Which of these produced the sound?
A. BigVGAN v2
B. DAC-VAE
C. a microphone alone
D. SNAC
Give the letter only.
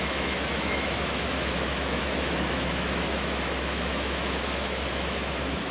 B